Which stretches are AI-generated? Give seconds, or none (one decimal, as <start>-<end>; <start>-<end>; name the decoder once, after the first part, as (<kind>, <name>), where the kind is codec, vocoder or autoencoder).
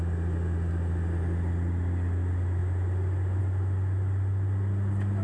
none